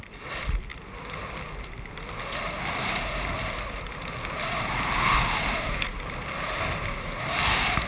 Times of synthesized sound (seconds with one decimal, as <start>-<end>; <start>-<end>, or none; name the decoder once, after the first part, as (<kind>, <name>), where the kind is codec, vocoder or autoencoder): none